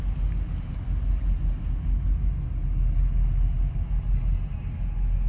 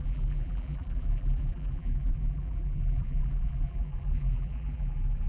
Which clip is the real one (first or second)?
first